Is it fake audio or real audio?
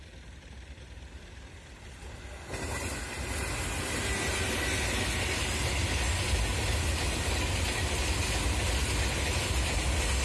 real